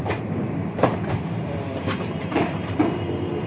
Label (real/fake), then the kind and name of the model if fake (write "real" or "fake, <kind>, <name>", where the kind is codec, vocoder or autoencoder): fake, vocoder, BigVGAN v2